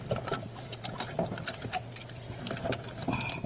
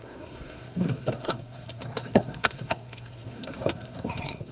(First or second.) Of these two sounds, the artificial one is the second